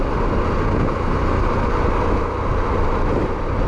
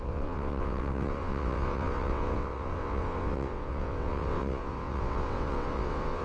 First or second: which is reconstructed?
second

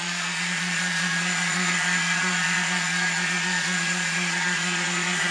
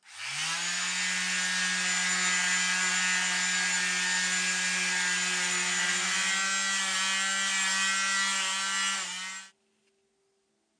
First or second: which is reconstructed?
first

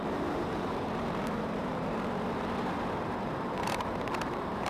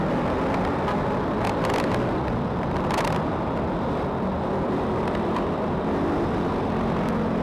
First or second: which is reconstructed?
first